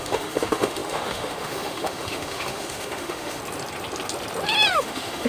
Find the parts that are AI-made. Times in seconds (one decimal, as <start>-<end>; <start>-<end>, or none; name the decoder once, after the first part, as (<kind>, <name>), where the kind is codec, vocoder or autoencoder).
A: 0.0-3.4 (autoencoder, DAC-VAE); 4.7-5.3